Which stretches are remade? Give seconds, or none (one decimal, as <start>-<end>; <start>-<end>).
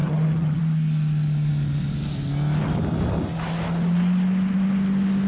0.0-0.6